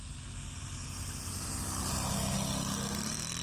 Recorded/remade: recorded